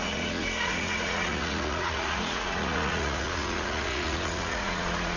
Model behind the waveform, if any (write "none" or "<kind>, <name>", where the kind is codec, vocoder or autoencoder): vocoder, Vocos